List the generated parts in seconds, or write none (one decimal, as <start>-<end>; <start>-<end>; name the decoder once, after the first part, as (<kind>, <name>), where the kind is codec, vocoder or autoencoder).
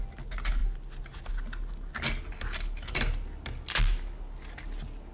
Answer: none